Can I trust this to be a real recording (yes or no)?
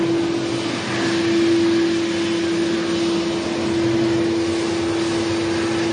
yes